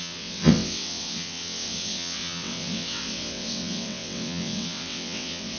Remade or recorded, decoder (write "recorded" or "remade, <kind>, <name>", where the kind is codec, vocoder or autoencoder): remade, vocoder, WaveNeXt